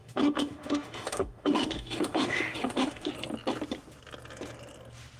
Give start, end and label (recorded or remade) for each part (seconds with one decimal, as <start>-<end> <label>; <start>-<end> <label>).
0.0-3.1 remade; 3.1-5.2 recorded